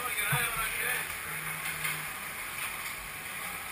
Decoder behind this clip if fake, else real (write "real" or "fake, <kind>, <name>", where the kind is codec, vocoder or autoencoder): real